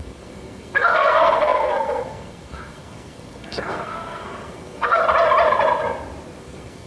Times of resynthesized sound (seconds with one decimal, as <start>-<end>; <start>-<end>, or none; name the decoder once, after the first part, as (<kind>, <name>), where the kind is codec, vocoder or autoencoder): 0.0-5.0 (codec, SNAC); 6.4-6.9